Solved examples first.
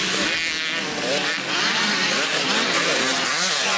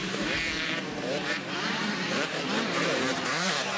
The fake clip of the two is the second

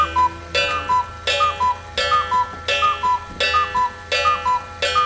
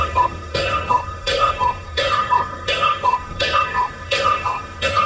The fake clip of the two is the second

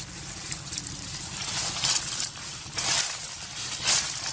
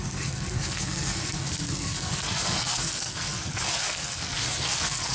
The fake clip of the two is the second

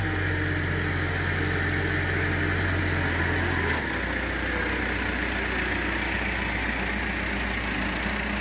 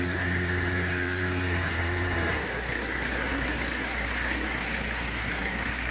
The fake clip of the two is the second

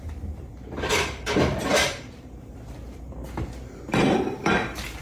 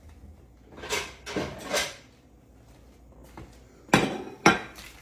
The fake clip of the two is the first